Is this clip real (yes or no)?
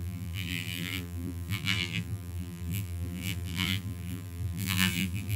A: no